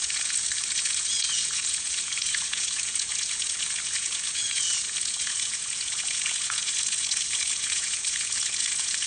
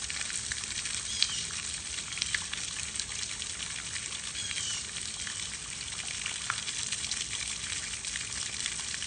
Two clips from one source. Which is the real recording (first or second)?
second